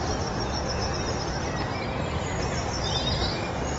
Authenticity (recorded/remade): remade